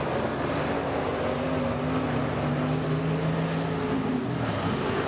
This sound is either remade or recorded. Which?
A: recorded